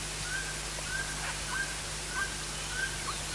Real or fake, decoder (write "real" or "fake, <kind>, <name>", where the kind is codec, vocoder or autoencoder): real